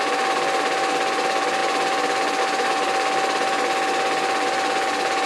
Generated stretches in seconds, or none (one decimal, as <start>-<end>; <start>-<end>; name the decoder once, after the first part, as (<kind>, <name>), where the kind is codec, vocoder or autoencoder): none

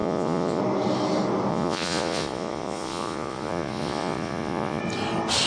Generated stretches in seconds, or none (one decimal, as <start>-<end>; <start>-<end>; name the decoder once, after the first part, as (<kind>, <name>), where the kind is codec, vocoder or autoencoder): 0.0-0.6 (vocoder, Vocos); 1.5-4.8